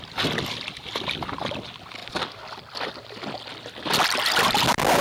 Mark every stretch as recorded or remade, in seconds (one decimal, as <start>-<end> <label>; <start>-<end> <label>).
0.0-5.0 recorded